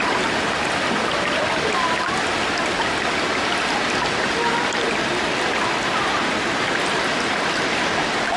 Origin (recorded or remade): recorded